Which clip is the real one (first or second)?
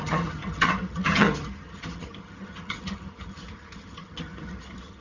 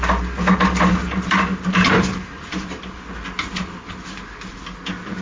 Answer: second